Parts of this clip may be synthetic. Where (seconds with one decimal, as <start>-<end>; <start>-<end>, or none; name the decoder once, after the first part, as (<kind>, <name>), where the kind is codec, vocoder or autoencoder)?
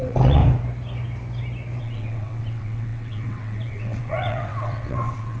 0.0-0.4 (vocoder, WaveNeXt); 1.8-5.4